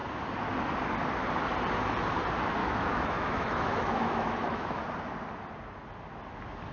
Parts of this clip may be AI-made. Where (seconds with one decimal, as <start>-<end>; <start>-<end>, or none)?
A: 2.6-4.8